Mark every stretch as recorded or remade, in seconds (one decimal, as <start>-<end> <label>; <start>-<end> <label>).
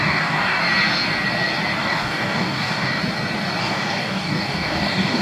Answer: 0.0-0.6 remade; 0.6-1.8 recorded; 1.8-3.0 remade; 3.0-3.6 recorded; 3.6-5.2 remade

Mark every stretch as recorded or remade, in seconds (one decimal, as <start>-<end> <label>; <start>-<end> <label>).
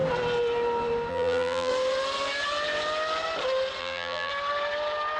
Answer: 0.0-1.1 recorded; 1.1-1.7 remade; 1.7-3.8 recorded; 3.8-4.3 remade; 4.3-5.2 recorded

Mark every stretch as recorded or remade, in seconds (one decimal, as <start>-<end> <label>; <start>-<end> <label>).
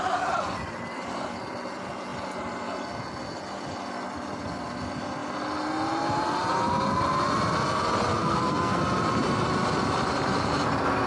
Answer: 0.0-8.2 recorded; 8.2-8.8 remade; 8.8-11.1 recorded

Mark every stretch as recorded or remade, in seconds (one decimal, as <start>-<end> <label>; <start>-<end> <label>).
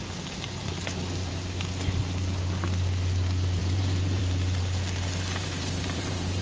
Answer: 0.0-0.6 recorded; 0.6-1.3 remade; 1.3-3.6 recorded; 3.6-4.2 remade; 4.2-5.4 recorded; 5.4-6.4 remade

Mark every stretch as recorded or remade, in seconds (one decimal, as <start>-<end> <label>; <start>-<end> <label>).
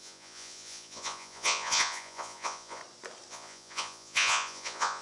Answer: 0.0-2.8 remade; 2.8-3.3 recorded; 3.3-5.0 remade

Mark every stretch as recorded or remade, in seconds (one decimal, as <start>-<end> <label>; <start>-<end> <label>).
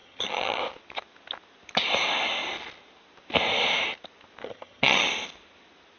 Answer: 0.0-0.6 remade; 0.6-4.4 recorded; 4.4-5.1 remade; 5.1-6.0 recorded